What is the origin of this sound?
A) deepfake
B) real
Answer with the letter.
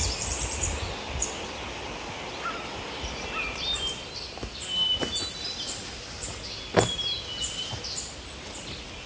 B